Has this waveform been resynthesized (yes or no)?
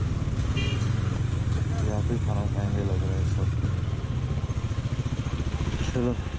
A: no